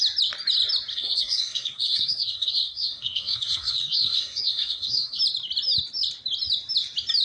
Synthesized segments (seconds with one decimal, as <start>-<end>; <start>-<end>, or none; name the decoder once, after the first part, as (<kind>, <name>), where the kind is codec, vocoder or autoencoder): 0.9-5.2 (codec, SNAC)